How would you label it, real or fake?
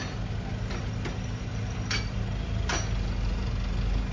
real